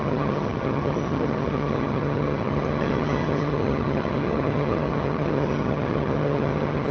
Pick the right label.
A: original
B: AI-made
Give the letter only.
B